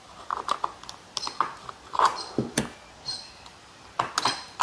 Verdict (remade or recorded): recorded